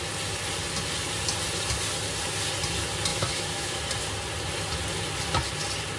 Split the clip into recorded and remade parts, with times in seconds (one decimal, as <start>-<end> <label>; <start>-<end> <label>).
0.0-3.1 recorded; 3.1-3.8 remade; 3.8-6.0 recorded